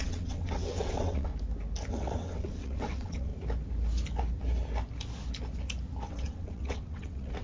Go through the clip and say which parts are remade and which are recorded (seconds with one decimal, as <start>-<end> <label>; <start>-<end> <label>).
0.0-1.3 remade; 1.3-1.9 recorded; 1.9-3.3 remade; 3.3-6.1 recorded; 6.1-7.4 remade